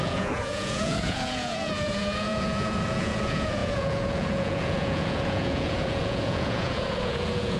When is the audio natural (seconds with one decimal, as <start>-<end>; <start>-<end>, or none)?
none